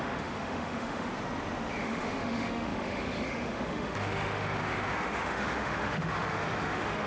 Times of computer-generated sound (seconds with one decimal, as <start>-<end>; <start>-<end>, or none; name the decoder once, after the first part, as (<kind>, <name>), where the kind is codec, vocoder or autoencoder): 0.0-1.1 (autoencoder, DAC-VAE); 1.8-7.1